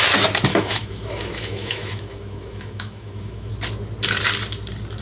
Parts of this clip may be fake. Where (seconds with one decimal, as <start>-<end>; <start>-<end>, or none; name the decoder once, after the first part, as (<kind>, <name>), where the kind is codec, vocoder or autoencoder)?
0.5-3.5 (autoencoder, DAC-VAE)